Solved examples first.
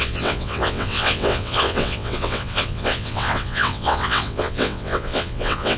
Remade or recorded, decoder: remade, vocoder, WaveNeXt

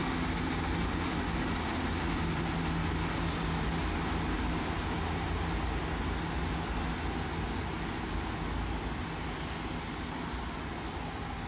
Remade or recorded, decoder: recorded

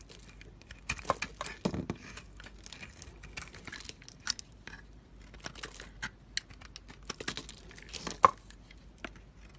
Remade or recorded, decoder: recorded